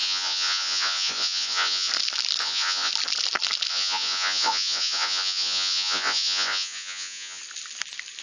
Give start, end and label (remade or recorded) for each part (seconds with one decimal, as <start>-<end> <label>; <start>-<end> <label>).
0.0-1.9 remade; 1.9-2.4 recorded; 2.4-2.9 remade; 2.9-3.7 recorded; 3.7-7.4 remade; 7.4-8.2 recorded